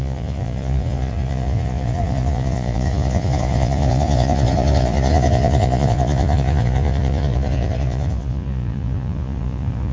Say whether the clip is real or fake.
fake